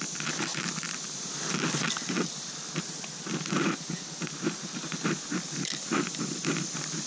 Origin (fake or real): real